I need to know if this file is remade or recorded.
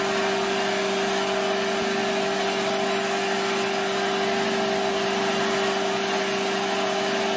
recorded